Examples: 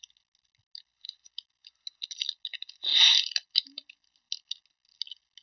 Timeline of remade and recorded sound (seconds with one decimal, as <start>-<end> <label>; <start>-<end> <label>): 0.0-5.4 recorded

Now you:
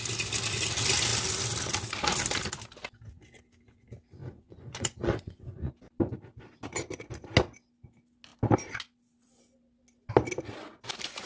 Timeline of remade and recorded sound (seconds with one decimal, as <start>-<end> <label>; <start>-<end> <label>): 0.0-4.2 recorded; 4.2-5.7 remade; 5.7-11.3 recorded

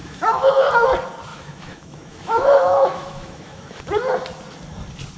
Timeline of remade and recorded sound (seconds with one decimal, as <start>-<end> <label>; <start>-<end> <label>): 0.0-0.7 remade; 0.7-1.3 recorded; 1.3-3.8 remade; 3.8-5.2 recorded

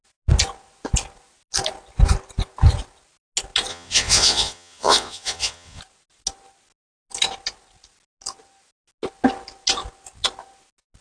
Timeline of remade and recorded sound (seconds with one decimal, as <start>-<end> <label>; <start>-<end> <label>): 0.0-3.7 recorded; 3.7-5.8 remade; 5.8-11.0 recorded

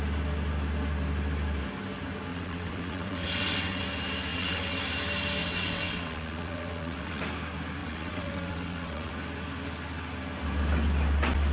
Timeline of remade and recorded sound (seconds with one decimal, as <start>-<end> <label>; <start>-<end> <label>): 0.0-2.3 recorded; 2.3-3.8 remade; 3.8-4.3 recorded; 4.3-4.8 remade; 4.8-5.4 recorded; 5.4-7.2 remade; 7.2-7.8 recorded; 7.8-9.1 remade; 9.1-11.5 recorded

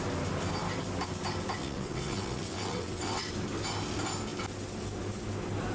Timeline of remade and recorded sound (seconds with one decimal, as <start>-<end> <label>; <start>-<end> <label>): 0.0-1.6 recorded; 1.6-3.3 remade; 3.3-5.7 recorded

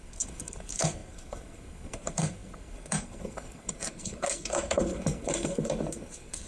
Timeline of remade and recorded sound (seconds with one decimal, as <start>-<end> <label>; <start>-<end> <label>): 0.0-6.5 remade

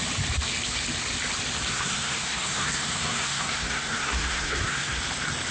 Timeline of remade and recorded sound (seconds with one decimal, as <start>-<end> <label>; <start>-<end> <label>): 0.0-1.7 recorded; 1.7-5.0 remade; 5.0-5.5 recorded